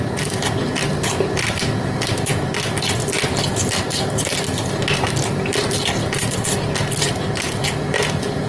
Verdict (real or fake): real